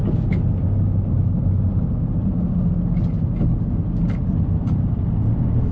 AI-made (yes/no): no